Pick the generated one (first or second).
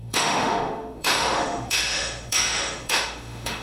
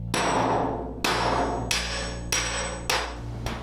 first